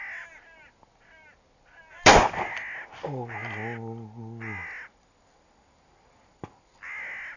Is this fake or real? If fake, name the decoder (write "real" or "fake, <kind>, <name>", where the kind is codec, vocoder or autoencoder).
real